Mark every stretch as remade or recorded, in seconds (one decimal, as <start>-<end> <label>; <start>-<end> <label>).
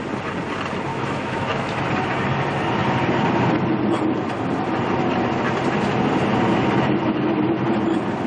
0.0-0.9 recorded; 0.9-1.9 remade; 1.9-8.3 recorded